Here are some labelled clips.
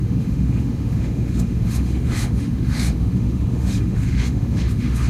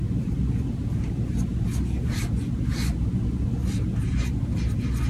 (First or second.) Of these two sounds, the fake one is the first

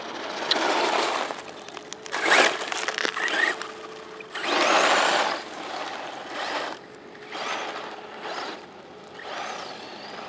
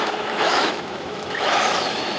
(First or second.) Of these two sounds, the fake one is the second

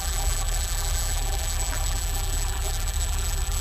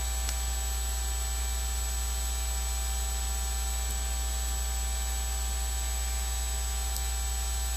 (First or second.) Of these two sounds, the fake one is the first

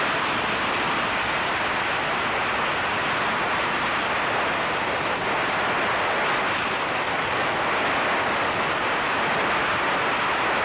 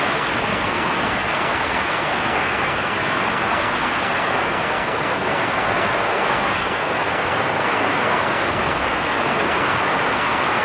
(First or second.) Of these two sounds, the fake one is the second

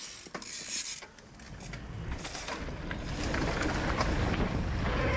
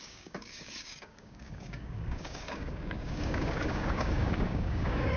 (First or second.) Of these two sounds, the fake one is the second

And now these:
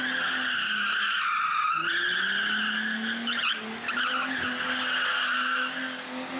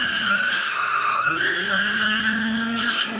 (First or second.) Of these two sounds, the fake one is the second